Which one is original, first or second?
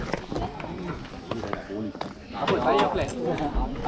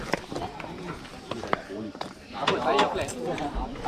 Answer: first